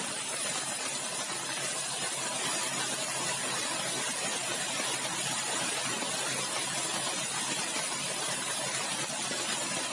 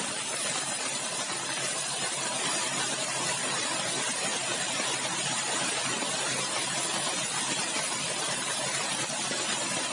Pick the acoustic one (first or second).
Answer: first